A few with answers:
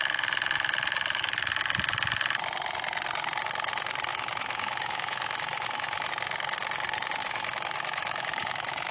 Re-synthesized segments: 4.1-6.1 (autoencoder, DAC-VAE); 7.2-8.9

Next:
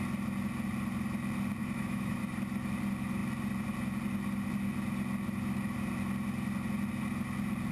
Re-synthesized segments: 1.6-2.2 (autoencoder, DAC-VAE)

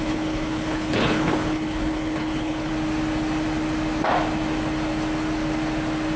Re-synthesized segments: 0.0-2.7 (codec, HILCodec)

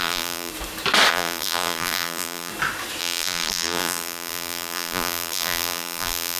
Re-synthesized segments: 0.0-0.5 (vocoder, BigVGAN v2); 1.1-2.5; 3.0-6.4